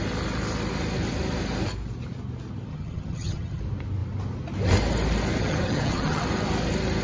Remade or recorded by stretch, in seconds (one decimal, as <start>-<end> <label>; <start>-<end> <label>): 0.0-2.7 recorded; 2.7-3.6 remade; 3.6-5.4 recorded; 5.4-6.2 remade; 6.2-7.0 recorded